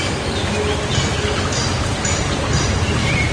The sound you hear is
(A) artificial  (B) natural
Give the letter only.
B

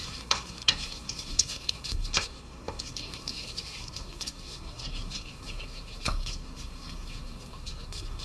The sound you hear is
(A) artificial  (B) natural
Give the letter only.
A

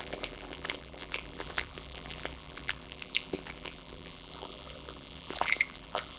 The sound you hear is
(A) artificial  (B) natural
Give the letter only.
A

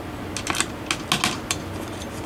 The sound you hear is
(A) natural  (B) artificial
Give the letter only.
A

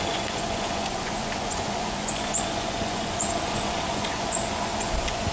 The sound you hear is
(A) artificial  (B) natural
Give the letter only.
A